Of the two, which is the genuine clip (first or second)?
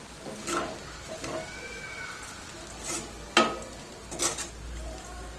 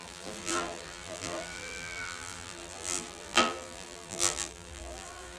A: first